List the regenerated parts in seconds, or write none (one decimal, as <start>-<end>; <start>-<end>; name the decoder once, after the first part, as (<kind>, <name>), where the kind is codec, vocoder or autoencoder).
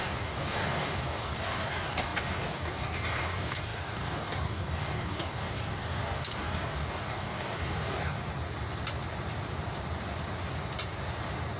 0.0-8.2 (codec, DAC)